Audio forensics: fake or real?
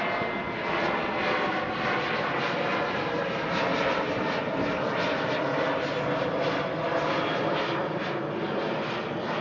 real